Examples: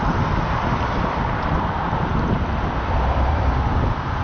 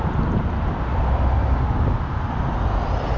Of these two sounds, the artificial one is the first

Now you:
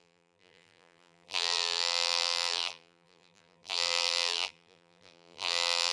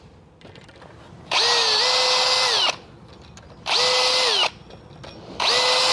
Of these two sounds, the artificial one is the first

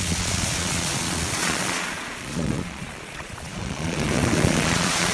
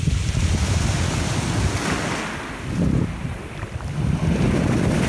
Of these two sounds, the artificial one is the first